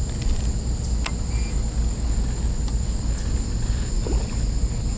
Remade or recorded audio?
recorded